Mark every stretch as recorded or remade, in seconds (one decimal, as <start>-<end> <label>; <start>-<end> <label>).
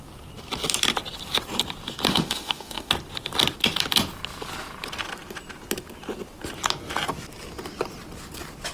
0.0-2.1 recorded; 2.1-2.9 remade; 2.9-8.7 recorded